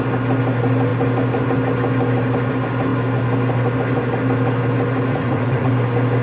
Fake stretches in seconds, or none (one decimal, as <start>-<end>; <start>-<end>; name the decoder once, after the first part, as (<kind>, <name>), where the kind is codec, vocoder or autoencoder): 5.1-5.7 (vocoder, Vocos)